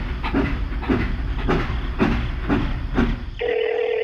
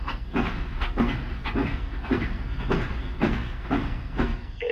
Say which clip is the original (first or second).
first